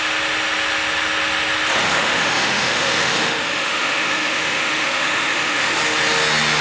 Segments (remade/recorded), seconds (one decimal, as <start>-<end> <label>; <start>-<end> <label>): 0.0-1.8 recorded; 1.8-5.8 remade; 5.8-6.6 recorded